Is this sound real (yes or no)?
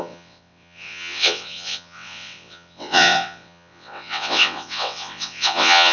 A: no